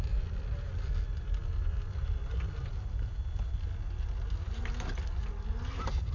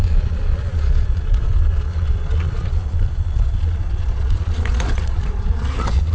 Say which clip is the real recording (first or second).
first